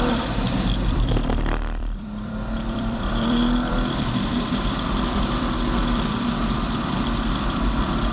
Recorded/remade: remade